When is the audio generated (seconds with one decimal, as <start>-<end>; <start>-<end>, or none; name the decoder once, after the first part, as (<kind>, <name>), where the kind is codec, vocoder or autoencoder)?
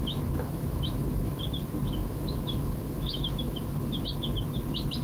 0.0-1.4 (autoencoder, DAC-VAE); 2.0-3.7